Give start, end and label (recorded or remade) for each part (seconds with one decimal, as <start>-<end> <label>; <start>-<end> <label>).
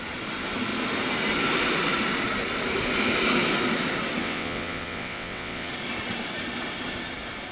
0.0-4.2 recorded; 4.2-5.7 remade; 5.7-7.5 recorded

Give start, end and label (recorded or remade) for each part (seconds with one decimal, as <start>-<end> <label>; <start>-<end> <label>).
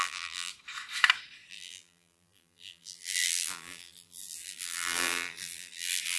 0.0-0.5 remade; 0.5-1.5 recorded; 1.5-6.2 remade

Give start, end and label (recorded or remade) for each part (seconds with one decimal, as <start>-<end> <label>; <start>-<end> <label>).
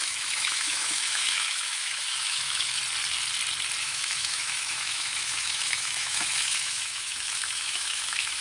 0.0-2.8 remade; 2.8-3.8 recorded; 3.8-8.4 remade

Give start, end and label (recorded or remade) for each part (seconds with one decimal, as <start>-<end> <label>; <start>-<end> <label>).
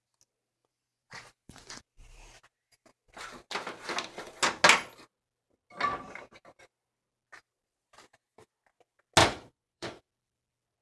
0.0-0.6 recorded; 0.6-1.8 remade; 1.8-9.2 recorded; 9.2-10.0 remade; 10.0-10.8 recorded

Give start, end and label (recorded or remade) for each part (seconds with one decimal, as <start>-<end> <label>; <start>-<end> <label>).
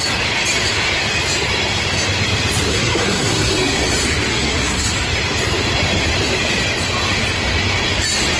0.0-2.7 recorded; 2.7-3.8 remade; 3.8-4.3 recorded; 4.3-4.9 remade; 4.9-8.4 recorded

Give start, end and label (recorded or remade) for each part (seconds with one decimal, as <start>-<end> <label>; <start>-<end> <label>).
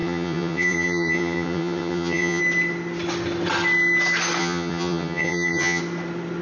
0.0-2.4 remade; 2.4-4.4 recorded; 4.4-5.8 remade; 5.8-6.4 recorded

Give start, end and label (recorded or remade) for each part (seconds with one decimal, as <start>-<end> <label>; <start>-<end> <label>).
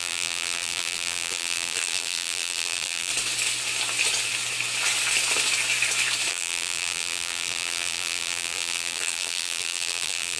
0.0-3.1 remade; 3.1-6.3 recorded; 6.3-10.4 remade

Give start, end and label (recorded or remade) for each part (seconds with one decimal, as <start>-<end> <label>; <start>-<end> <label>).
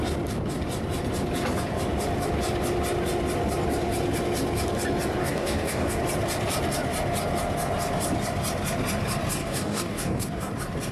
0.0-5.2 recorded; 5.2-6.0 remade; 6.0-9.4 recorded; 9.4-10.5 remade; 10.5-10.9 recorded